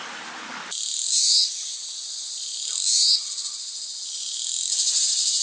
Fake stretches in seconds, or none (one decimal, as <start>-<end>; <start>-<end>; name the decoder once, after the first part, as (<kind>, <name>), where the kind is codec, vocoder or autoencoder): none